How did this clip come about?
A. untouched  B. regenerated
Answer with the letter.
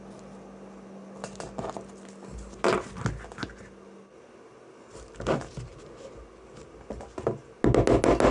A